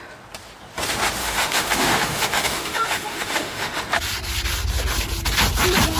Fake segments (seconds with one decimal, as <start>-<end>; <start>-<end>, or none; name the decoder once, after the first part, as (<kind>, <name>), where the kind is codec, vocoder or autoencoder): 1.2-3.8 (autoencoder, DAC-VAE)